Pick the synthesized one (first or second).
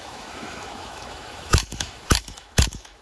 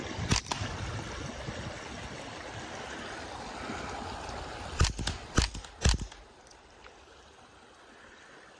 first